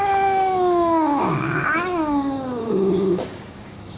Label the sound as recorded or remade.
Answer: remade